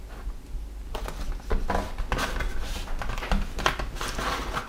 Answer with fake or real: real